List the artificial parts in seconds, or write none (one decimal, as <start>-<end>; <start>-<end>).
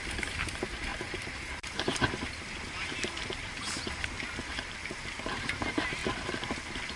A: 0.0-6.0